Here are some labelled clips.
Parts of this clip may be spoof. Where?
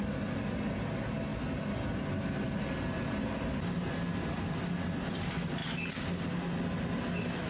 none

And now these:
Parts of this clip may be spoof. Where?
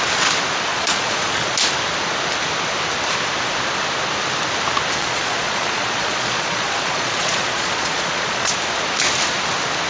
0.7-1.5 (vocoder, Vocos); 5.0-8.5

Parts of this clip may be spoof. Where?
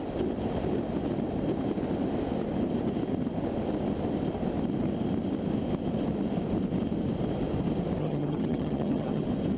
8.0-9.2 (vocoder, HiFi-GAN)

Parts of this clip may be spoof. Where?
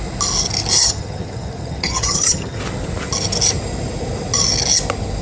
0.8-2.6 (vocoder, HiFi-GAN)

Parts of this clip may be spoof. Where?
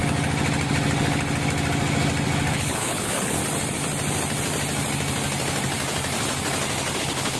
2.5-3.4 (codec, HILCodec); 7.0-7.4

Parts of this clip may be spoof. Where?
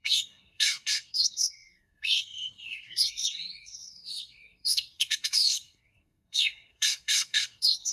0.0-7.9 (codec, SNAC)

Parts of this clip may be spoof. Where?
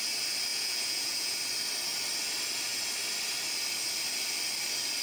0.5-1.4 (vocoder, Vocos)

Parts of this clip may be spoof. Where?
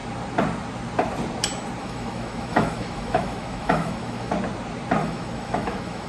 1.8-4.3 (autoencoder, DAC-VAE); 5.0-6.1